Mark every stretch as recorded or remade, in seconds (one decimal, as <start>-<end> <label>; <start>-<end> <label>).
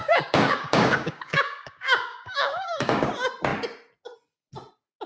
0.0-3.1 remade; 3.1-5.1 recorded